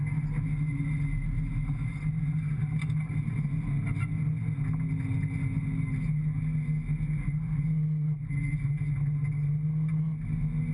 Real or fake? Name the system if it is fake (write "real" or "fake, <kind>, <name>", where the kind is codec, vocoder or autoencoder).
real